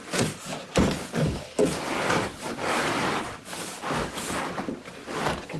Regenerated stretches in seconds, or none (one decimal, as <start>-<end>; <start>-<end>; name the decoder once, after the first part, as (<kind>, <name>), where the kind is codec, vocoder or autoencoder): 1.1-4.5 (codec, DAC)